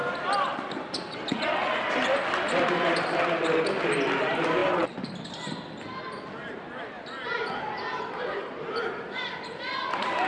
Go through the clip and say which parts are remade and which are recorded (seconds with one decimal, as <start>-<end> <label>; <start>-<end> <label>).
0.0-1.5 remade; 1.5-10.3 recorded